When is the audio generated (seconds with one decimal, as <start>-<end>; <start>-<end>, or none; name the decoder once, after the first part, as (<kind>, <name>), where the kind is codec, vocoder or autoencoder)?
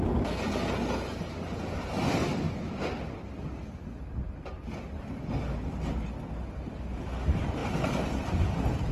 2.2-4.0 (vocoder, BigVGAN v2); 7.6-8.3